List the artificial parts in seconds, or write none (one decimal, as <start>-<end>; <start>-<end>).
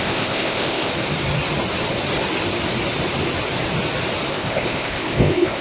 0.0-0.9; 4.3-5.6